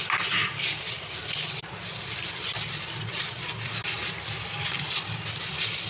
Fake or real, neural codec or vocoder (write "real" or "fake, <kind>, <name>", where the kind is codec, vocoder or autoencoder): real